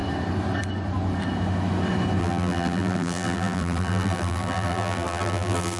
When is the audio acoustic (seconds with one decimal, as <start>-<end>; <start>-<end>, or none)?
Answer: 0.0-2.2